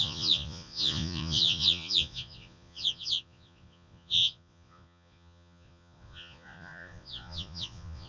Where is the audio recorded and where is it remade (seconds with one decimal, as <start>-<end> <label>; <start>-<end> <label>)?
0.0-8.1 remade

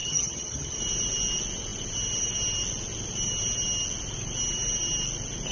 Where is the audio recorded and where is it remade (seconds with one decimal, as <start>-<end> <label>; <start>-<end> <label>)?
0.0-0.8 remade; 0.8-5.5 recorded

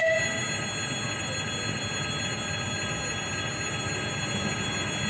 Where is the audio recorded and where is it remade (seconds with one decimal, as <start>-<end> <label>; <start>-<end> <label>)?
0.0-5.1 recorded

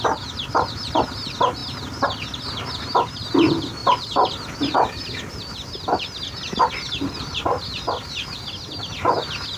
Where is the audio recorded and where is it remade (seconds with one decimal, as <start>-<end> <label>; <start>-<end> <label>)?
0.0-9.6 recorded